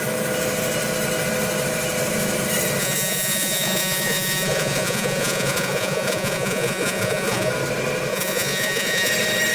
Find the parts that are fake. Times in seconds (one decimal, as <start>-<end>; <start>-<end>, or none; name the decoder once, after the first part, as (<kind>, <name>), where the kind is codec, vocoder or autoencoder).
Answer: 2.8-7.5 (vocoder, Vocos); 8.1-9.1

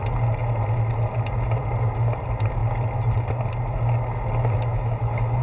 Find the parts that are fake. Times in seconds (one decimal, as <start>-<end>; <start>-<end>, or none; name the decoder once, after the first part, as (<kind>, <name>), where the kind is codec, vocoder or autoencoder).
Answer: 4.7-5.4 (autoencoder, DAC-VAE)